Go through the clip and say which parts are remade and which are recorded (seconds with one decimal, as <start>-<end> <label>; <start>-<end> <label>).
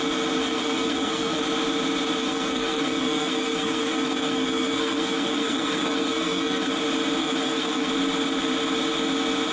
0.0-0.4 recorded; 0.4-1.4 remade; 1.4-2.2 recorded; 2.2-6.7 remade; 6.7-7.2 recorded; 7.2-7.9 remade; 7.9-9.5 recorded